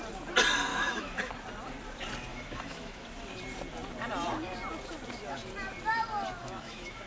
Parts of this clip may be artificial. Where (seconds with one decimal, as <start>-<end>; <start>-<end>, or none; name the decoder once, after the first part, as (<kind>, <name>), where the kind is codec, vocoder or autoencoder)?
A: 0.7-1.3 (autoencoder, DAC-VAE); 2.3-3.0; 6.4-7.1